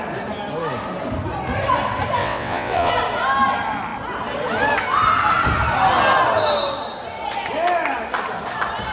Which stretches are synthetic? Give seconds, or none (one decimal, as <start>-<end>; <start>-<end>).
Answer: 2.2-2.9